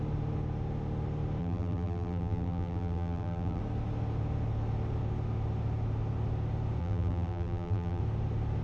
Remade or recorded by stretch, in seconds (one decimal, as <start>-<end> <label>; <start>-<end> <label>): 0.0-1.4 recorded; 1.4-3.6 remade; 3.6-6.8 recorded; 6.8-8.0 remade; 8.0-8.6 recorded